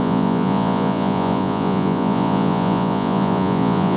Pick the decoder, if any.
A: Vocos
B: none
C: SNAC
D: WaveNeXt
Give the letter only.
A